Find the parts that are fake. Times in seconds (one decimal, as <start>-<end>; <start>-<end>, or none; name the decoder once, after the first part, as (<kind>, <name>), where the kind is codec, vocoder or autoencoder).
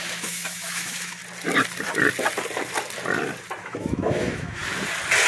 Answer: 0.0-1.2 (autoencoder, DAC-VAE); 3.6-4.6